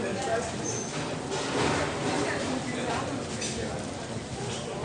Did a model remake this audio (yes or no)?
no